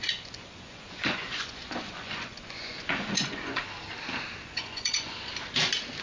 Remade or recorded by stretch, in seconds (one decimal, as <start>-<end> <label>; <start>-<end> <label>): 0.0-3.6 remade; 3.6-4.4 recorded; 4.4-5.3 remade; 5.3-6.0 recorded